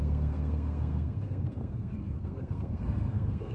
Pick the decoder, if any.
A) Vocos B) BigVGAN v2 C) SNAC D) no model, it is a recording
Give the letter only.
C